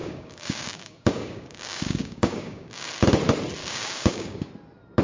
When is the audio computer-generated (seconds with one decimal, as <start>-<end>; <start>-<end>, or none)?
0.0-2.9; 3.6-4.5

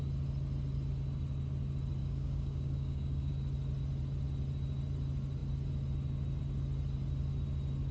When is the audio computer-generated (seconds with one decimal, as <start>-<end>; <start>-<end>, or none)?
2.0-3.3

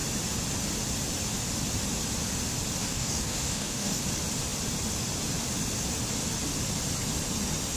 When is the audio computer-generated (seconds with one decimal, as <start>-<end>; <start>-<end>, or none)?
2.8-4.0

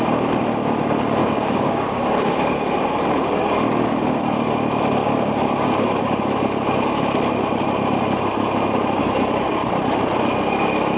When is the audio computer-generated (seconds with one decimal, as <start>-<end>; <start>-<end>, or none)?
1.2-2.7; 5.0-6.2; 9.0-9.7

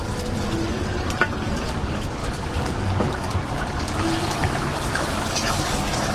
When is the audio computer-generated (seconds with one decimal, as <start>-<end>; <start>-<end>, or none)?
1.5-6.1

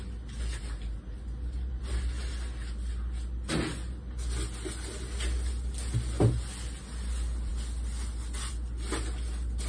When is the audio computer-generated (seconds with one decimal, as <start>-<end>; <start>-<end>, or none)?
none